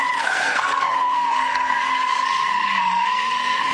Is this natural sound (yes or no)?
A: no